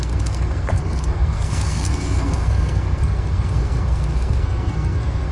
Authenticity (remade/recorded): remade